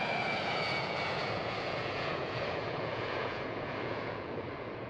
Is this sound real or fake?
fake